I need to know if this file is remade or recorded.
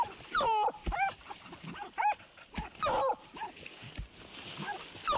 recorded